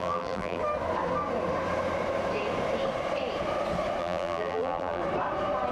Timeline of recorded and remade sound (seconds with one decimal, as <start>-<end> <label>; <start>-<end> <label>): 0.0-0.6 remade; 0.6-4.0 recorded; 4.0-5.0 remade; 5.0-5.7 recorded